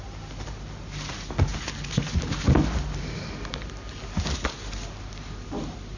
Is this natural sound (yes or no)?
yes